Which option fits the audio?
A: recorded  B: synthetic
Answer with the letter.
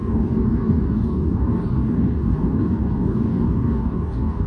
B